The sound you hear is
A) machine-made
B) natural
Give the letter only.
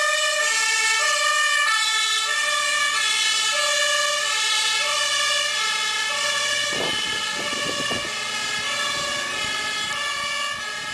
B